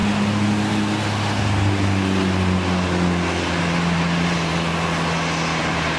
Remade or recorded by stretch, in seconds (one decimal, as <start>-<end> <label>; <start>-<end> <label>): 0.0-3.6 recorded; 3.6-4.5 remade; 4.5-5.6 recorded; 5.6-6.0 remade